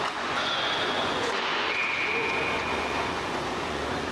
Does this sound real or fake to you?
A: fake